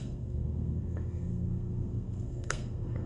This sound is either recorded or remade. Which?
remade